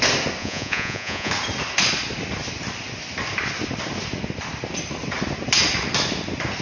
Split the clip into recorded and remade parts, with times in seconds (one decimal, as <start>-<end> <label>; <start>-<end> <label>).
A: 0.0-0.4 recorded; 0.4-1.3 remade; 1.3-6.6 recorded